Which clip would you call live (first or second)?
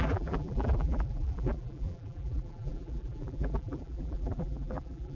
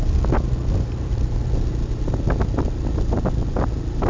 second